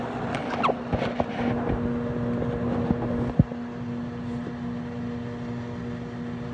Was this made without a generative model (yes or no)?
yes